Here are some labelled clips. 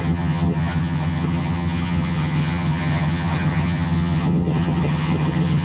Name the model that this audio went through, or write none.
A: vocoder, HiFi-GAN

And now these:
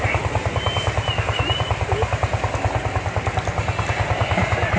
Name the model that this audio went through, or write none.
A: none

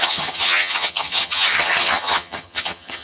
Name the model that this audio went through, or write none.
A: vocoder, HiFi-GAN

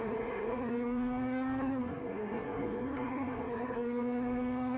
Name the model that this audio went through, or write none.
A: codec, SNAC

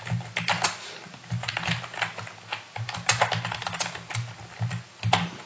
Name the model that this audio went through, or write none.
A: none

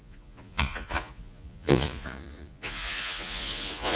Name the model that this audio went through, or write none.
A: vocoder, Vocos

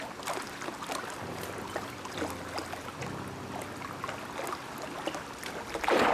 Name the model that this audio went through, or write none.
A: none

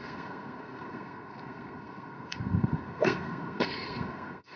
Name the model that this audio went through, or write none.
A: codec, SNAC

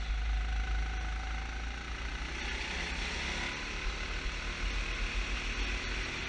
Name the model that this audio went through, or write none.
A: none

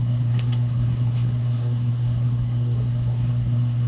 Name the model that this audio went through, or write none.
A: codec, SNAC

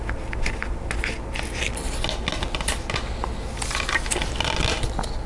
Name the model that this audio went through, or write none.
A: none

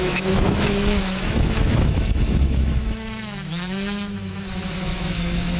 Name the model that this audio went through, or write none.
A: autoencoder, DAC-VAE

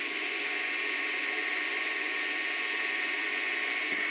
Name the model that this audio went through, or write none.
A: vocoder, Vocos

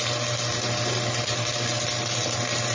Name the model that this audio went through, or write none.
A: none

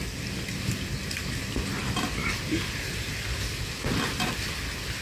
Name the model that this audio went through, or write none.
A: none